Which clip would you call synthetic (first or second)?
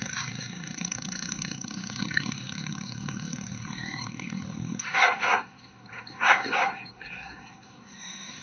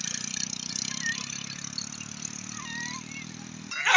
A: first